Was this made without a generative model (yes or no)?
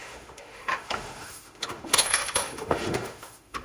no